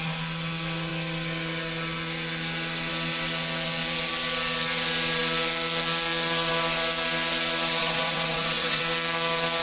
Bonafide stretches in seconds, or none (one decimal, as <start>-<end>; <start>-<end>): 0.0-7.8; 8.8-9.6